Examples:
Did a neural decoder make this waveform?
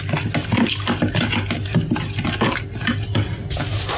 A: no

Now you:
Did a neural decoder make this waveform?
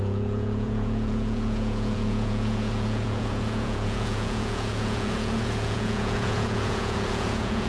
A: yes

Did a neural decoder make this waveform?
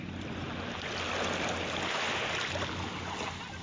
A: no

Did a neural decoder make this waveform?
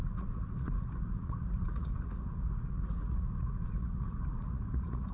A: yes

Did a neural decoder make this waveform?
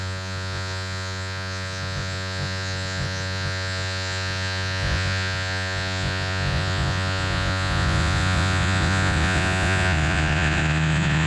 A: yes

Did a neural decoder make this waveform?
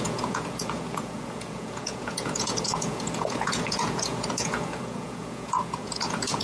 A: yes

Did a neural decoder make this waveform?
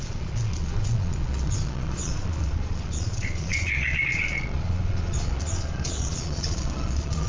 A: yes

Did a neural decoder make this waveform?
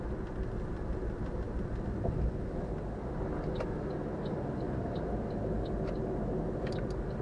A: no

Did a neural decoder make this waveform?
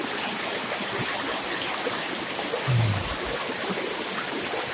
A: no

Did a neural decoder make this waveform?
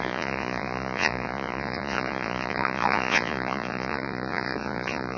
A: yes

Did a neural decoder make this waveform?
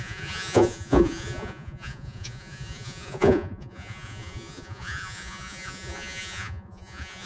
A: yes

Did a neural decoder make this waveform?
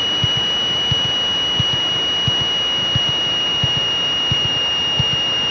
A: no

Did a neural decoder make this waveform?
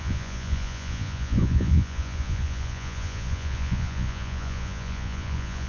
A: yes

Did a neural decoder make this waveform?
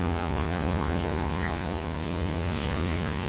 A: yes